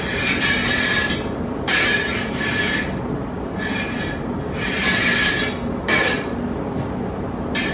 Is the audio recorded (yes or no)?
no